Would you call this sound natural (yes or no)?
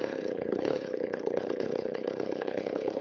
no